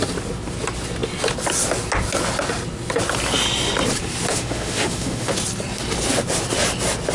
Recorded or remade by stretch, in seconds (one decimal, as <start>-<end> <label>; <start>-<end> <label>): 0.0-4.3 recorded; 4.3-5.3 remade; 5.3-7.1 recorded